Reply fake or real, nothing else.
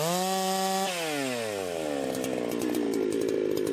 real